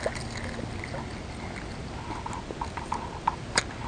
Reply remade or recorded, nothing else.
recorded